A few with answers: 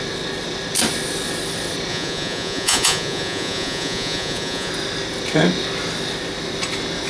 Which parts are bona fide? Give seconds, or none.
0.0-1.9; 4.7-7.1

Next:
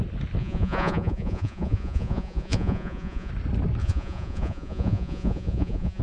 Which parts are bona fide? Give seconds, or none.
0.0-0.4; 3.3-3.8